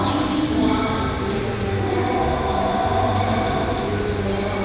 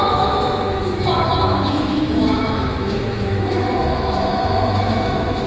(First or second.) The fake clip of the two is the second